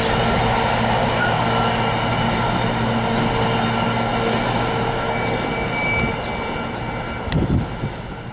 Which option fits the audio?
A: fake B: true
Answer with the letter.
B